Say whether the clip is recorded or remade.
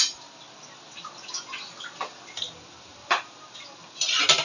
recorded